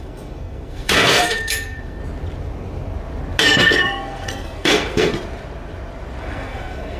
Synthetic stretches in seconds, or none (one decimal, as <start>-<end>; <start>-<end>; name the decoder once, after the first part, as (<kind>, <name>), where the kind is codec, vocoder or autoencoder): 0.0-2.0 (codec, SNAC); 3.4-5.1; 6.2-7.0